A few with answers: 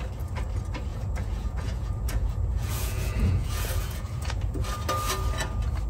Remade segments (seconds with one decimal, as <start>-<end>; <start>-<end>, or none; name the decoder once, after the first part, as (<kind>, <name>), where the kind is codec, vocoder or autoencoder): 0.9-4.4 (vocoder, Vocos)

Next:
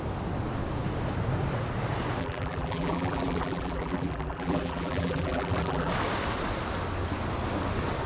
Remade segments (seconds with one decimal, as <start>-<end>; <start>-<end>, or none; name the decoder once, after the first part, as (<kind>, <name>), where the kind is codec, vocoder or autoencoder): 2.2-5.9 (vocoder, BigVGAN v2)

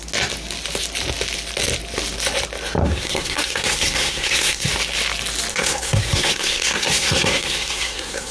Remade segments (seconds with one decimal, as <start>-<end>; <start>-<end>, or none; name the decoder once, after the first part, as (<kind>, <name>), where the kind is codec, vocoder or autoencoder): 2.8-4.7 (codec, SNAC); 5.5-8.3

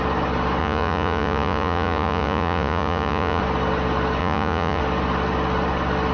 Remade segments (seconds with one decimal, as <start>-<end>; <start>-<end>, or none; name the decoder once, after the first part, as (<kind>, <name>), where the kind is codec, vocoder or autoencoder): 0.6-3.4 (vocoder, Vocos); 4.2-4.8

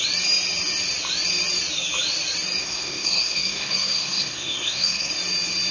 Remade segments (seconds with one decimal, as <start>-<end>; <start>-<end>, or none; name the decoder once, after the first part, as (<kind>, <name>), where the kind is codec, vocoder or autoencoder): 2.6-5.1 (codec, SNAC)